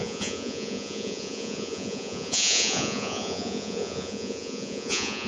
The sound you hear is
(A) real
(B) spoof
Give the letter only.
B